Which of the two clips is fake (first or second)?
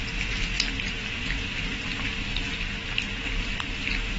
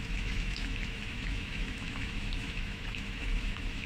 second